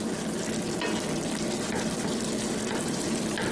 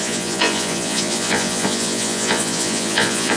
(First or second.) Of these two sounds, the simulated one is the second